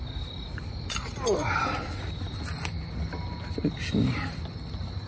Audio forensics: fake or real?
real